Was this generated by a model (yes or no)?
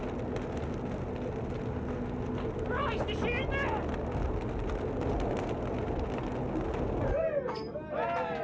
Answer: no